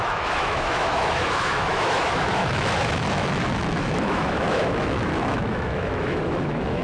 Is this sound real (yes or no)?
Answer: no